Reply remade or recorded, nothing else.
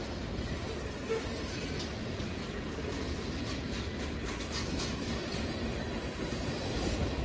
recorded